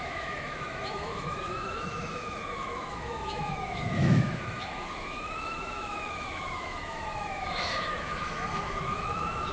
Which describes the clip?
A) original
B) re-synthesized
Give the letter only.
B